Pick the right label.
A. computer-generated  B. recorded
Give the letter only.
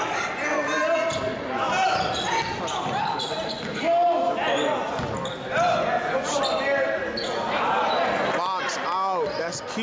B